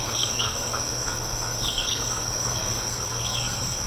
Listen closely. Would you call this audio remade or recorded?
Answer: remade